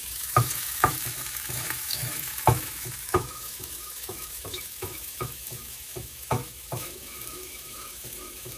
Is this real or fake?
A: fake